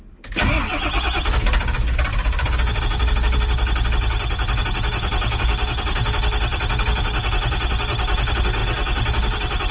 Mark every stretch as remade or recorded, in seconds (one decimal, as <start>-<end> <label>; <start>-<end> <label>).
0.0-2.1 recorded; 2.1-2.8 remade; 2.8-9.7 recorded